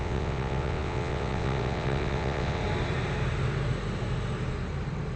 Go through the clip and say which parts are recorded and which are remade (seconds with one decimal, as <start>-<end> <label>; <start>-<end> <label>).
0.0-2.6 remade; 2.6-5.2 recorded